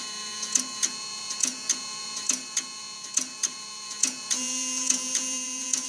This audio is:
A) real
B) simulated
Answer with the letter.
B